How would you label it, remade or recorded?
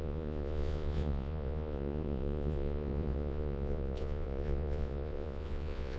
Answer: remade